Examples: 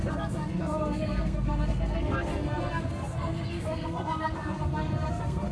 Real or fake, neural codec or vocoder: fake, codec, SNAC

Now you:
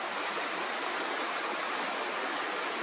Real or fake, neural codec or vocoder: real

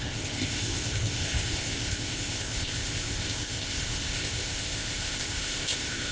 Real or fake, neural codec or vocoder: fake, codec, ZipCodec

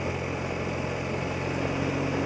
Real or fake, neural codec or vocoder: real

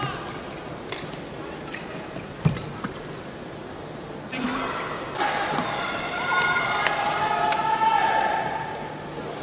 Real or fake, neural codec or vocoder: fake, vocoder, BigVGAN v2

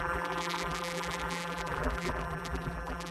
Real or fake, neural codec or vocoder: fake, vocoder, BigVGAN v2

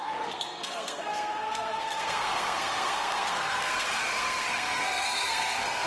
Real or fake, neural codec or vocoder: fake, codec, SNAC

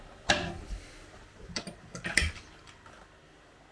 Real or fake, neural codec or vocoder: real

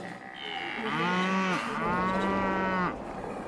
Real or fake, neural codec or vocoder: real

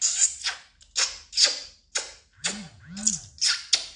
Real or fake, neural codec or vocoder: real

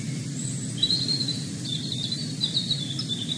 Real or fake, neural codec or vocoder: real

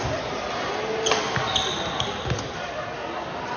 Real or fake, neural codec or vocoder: real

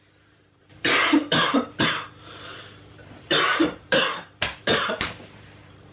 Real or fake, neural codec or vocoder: fake, vocoder, BigVGAN v2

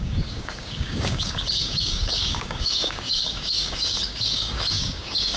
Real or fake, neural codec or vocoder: fake, codec, DAC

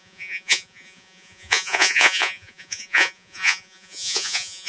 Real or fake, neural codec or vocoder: fake, vocoder, Vocos